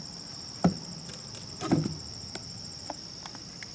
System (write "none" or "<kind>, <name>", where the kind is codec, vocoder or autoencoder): vocoder, BigVGAN v2